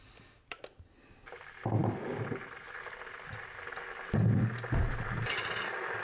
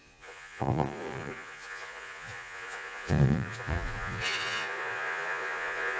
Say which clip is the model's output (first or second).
second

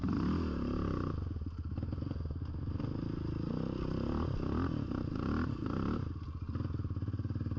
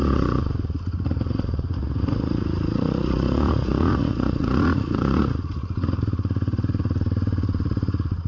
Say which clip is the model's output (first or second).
second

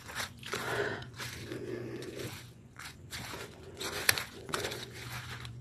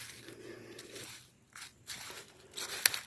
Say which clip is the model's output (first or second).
first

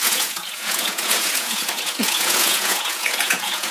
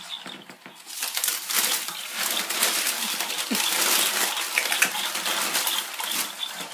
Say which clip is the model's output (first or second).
first